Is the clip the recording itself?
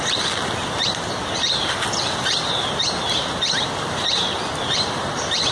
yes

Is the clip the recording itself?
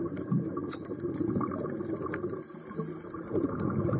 yes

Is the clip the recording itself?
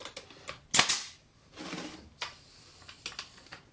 yes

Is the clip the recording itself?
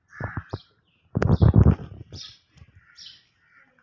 no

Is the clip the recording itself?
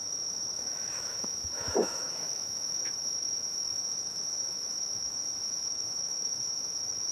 no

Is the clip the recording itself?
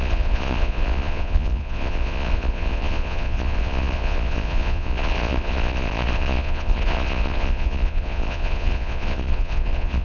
no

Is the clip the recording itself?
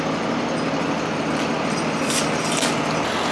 yes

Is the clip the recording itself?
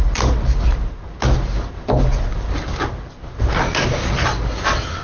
yes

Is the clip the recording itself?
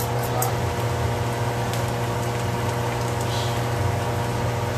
yes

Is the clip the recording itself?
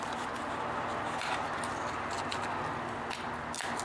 yes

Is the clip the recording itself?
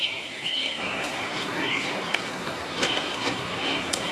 no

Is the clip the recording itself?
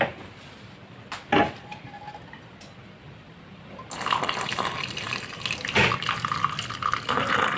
yes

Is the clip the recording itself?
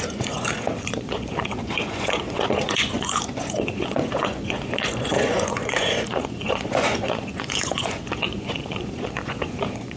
no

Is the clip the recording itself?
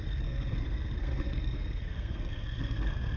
no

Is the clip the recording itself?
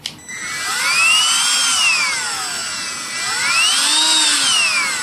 yes